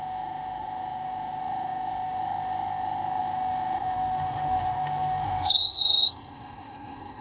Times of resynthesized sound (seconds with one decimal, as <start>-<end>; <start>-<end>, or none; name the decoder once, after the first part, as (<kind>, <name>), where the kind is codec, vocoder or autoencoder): 0.0-7.2 (autoencoder, DAC-VAE)